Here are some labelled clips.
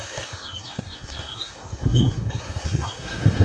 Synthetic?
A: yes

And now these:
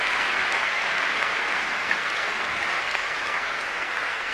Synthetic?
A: yes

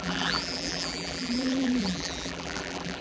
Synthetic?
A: yes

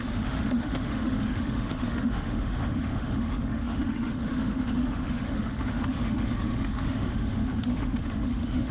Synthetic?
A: yes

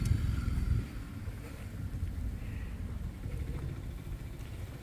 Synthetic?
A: no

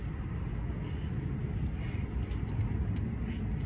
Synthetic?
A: no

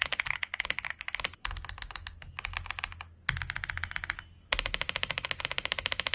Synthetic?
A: no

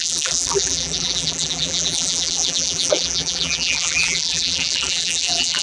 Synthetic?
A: yes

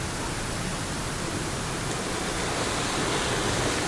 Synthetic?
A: no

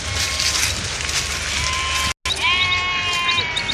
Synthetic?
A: no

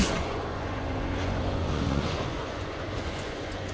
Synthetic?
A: yes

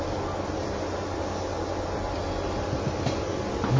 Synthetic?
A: no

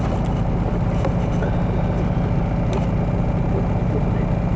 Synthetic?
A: no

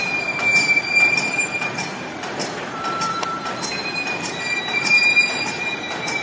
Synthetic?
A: yes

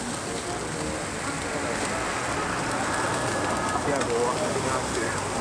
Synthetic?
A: no